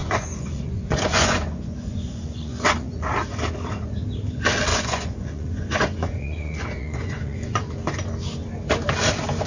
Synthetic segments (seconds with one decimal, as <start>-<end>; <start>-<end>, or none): 0.0-3.1; 4.7-7.7